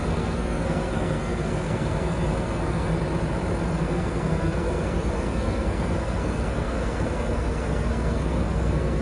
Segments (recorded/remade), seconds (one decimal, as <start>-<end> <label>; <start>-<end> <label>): 0.0-2.9 remade; 2.9-3.8 recorded; 3.8-9.0 remade